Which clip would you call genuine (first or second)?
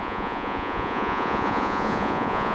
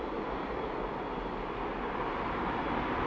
second